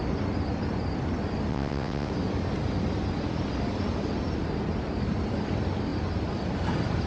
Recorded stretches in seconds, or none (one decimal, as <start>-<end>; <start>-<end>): 0.0-1.5; 2.1-7.1